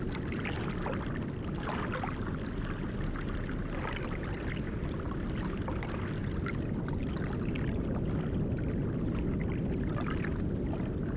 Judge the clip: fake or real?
real